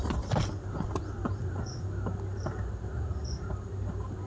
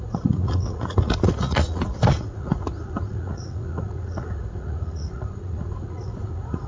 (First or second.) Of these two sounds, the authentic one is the first